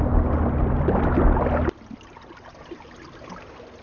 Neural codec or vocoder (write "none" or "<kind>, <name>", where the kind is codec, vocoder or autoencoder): none